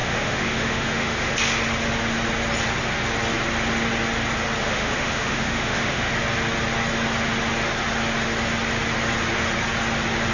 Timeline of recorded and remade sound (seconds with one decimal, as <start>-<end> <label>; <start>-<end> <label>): 0.0-1.3 remade; 1.3-4.6 recorded; 4.6-6.1 remade; 6.1-10.3 recorded